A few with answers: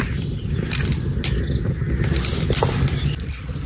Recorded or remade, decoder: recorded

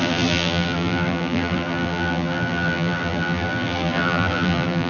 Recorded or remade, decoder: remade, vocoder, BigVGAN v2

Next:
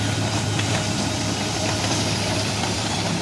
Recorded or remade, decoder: remade, vocoder, BigVGAN v2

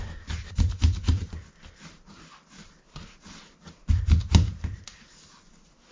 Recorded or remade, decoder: recorded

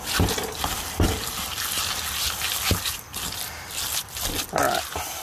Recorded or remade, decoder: recorded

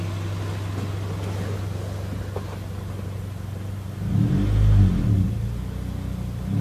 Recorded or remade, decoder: recorded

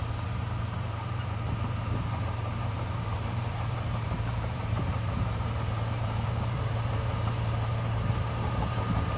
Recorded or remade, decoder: remade, vocoder, BigVGAN v2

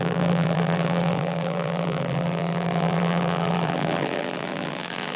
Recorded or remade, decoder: remade, vocoder, BigVGAN v2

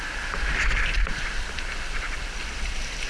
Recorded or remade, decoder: remade, vocoder, BigVGAN v2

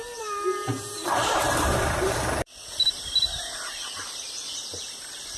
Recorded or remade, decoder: remade, vocoder, BigVGAN v2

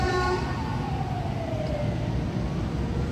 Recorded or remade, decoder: recorded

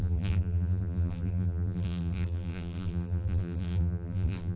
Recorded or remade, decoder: remade, vocoder, BigVGAN v2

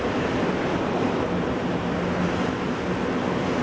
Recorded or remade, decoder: recorded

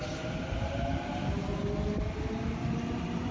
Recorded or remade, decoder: recorded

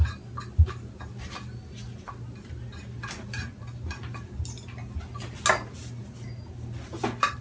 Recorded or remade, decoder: recorded